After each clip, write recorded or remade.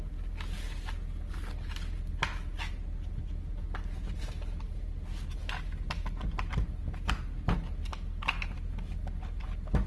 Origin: recorded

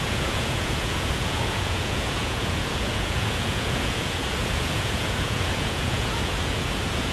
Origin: remade